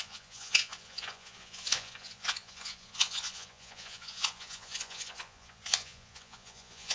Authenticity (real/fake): fake